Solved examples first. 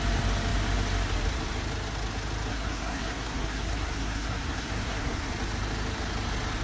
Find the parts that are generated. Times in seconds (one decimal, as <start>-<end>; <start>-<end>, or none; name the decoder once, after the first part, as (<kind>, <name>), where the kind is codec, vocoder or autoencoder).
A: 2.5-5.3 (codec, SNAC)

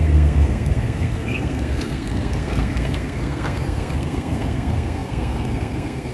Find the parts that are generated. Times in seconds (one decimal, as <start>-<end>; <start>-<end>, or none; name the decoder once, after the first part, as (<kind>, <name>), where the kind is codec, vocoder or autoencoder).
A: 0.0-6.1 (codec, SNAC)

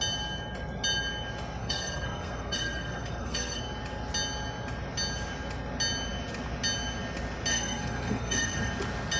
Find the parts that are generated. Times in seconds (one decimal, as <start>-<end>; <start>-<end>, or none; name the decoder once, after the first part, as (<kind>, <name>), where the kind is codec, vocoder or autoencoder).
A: 1.6-3.6 (codec, SNAC); 7.5-8.7